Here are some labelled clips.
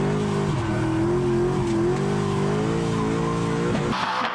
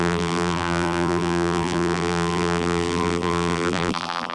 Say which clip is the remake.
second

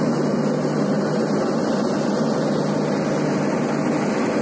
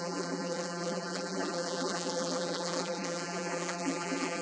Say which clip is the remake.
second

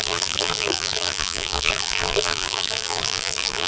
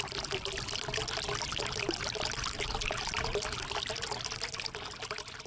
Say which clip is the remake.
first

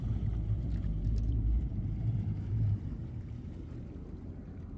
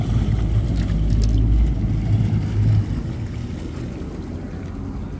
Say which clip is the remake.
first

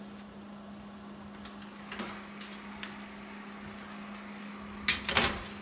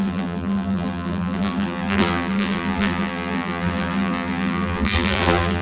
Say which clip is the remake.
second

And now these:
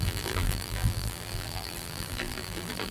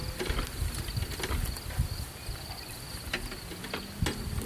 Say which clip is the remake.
first